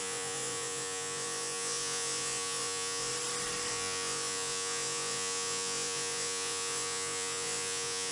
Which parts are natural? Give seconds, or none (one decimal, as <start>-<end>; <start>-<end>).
3.1-3.7